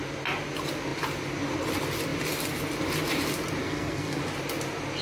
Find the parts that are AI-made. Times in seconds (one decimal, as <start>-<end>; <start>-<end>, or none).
3.6-4.2